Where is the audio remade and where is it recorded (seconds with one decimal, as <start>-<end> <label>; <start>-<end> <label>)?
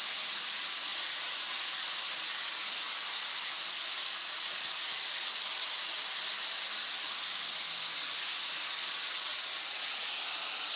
0.0-9.3 recorded; 9.3-10.2 remade; 10.2-10.8 recorded